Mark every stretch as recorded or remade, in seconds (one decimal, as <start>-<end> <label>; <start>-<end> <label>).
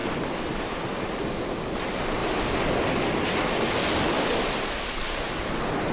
0.0-5.9 recorded